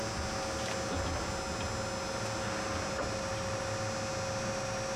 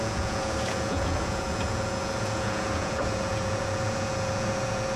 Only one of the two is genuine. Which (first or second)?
first